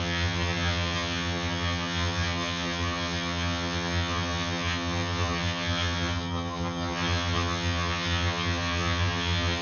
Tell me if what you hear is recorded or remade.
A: remade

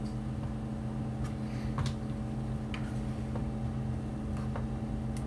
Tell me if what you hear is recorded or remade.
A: recorded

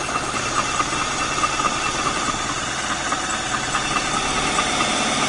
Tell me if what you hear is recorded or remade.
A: recorded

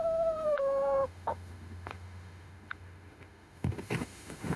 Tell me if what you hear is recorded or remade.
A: remade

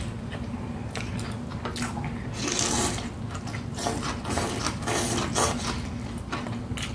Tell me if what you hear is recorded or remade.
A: recorded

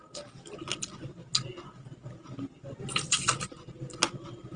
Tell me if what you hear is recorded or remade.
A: recorded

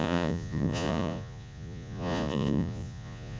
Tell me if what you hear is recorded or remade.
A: remade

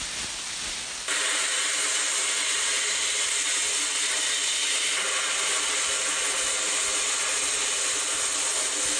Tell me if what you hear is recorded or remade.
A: recorded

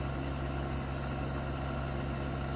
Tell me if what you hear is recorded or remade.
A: recorded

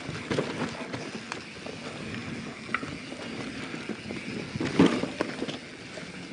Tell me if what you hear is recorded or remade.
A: recorded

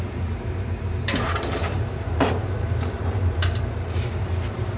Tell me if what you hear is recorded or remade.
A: remade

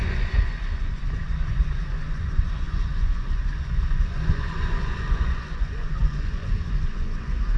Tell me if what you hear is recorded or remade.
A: remade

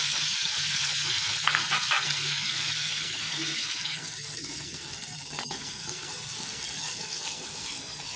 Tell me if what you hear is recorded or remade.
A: remade